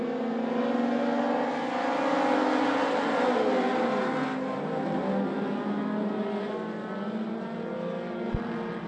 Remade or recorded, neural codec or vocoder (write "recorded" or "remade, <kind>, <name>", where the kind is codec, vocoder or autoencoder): recorded